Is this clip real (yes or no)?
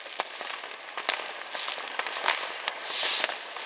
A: yes